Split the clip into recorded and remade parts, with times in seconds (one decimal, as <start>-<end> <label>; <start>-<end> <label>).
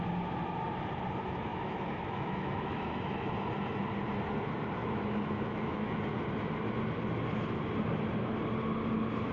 0.0-1.5 recorded; 1.5-3.3 remade; 3.3-4.8 recorded; 4.8-6.0 remade; 6.0-9.3 recorded